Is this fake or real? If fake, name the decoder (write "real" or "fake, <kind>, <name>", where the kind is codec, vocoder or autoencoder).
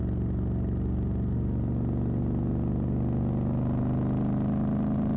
real